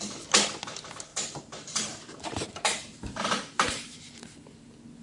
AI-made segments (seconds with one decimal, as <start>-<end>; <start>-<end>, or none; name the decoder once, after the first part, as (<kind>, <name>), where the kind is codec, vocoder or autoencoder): 1.1-4.1 (vocoder, BigVGAN v2)